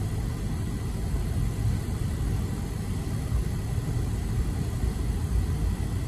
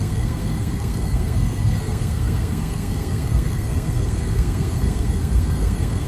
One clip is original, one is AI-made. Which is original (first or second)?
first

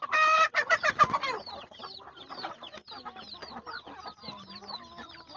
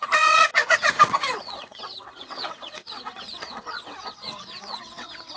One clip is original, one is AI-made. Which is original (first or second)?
first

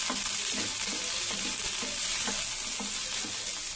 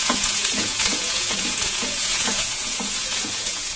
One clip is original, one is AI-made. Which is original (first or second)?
first